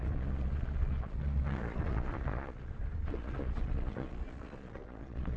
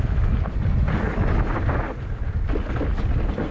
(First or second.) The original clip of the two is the second